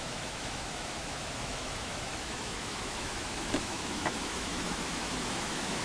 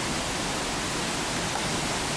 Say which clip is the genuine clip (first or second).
second